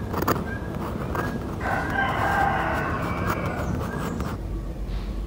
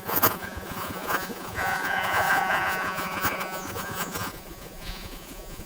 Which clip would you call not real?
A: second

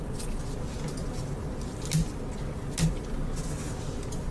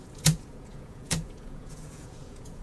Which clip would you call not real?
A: second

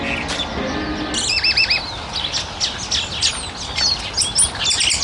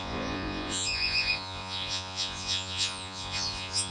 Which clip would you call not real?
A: second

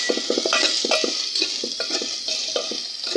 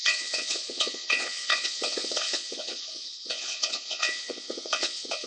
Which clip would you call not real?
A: second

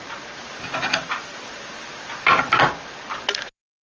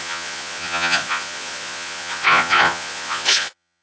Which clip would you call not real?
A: second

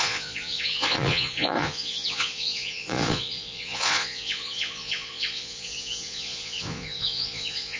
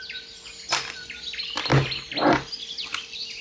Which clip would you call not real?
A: first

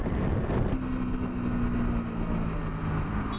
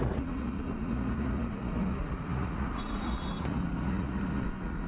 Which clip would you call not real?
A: second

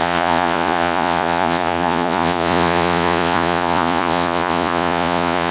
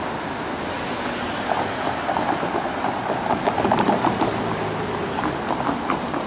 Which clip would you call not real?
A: first